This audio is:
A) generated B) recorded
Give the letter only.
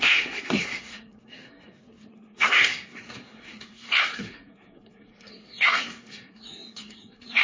A